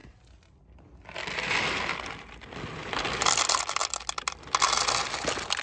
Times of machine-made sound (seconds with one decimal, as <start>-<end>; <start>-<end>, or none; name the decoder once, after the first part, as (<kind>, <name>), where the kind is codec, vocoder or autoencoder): none